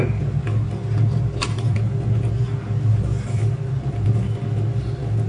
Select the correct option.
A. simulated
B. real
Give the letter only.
B